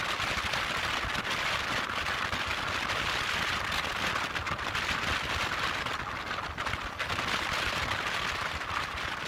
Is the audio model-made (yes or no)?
no